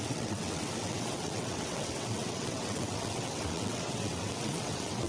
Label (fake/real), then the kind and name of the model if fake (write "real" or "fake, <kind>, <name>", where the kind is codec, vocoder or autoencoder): fake, vocoder, WaveNeXt